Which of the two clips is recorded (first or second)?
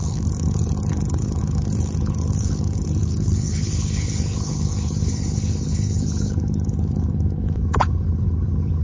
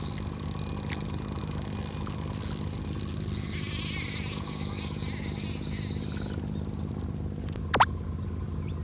second